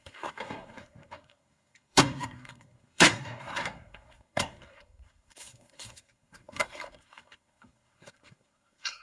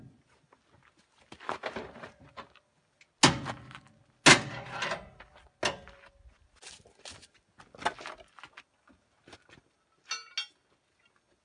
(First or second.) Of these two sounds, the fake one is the first